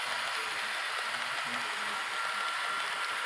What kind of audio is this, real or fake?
fake